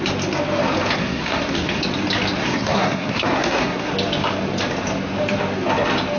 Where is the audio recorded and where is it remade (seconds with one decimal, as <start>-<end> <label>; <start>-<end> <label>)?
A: 0.0-1.0 recorded; 1.0-1.8 remade; 1.8-2.4 recorded; 2.4-3.9 remade; 3.9-6.2 recorded